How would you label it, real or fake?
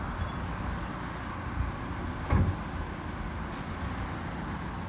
real